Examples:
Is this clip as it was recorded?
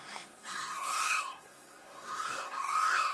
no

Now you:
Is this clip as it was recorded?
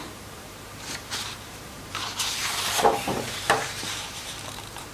no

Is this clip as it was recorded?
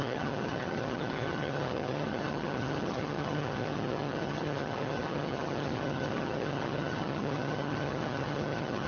no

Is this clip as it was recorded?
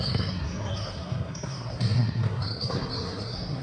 no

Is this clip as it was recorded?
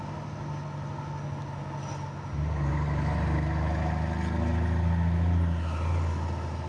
yes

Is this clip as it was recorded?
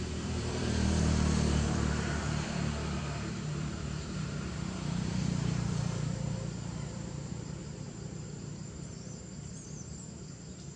no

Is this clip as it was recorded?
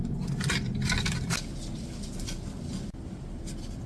yes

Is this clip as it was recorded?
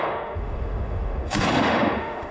no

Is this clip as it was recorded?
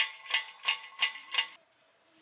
yes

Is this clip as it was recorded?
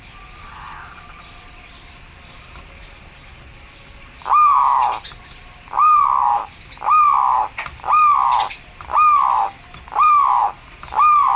no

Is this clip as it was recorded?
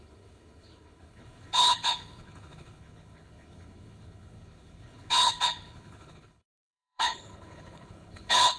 no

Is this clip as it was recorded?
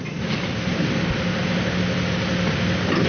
yes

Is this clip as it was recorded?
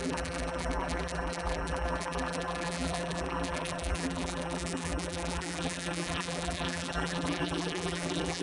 no